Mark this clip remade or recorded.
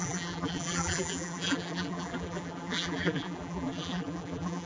remade